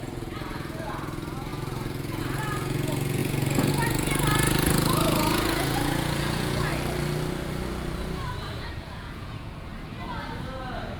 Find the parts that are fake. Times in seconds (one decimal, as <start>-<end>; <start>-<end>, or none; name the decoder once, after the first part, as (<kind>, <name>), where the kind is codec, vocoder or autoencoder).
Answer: 0.0-6.7 (vocoder, Vocos); 8.5-9.7